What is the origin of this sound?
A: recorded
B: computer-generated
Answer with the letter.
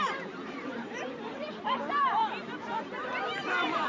B